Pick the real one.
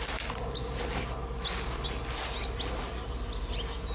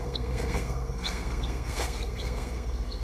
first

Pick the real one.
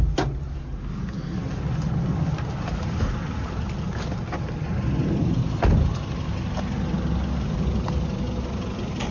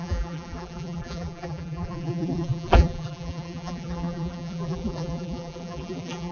first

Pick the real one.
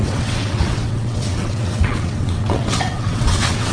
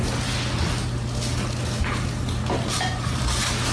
second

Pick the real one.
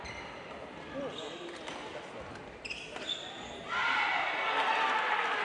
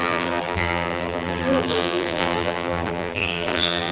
first